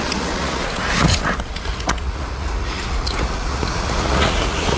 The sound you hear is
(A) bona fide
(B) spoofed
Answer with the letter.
B